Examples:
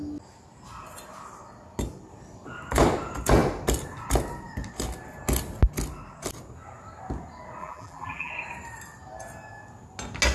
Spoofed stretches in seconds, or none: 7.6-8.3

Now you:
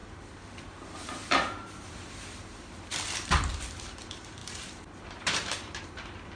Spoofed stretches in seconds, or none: 0.0-2.9; 3.5-6.4